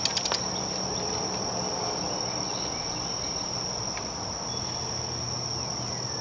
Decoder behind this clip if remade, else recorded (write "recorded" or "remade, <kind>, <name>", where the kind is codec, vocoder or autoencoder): recorded